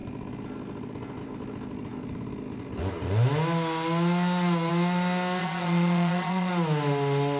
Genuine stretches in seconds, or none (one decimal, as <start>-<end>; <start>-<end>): 0.0-5.4; 6.5-7.4